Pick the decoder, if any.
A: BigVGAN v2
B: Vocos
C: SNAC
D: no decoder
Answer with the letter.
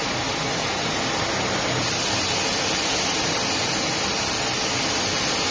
D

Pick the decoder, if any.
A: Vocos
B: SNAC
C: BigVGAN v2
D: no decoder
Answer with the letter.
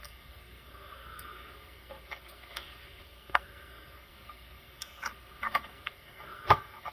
B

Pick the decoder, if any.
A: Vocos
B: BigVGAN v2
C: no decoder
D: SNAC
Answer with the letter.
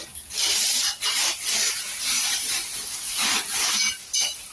C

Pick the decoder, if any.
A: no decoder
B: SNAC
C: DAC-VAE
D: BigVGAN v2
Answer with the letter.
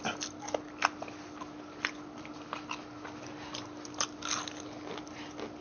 A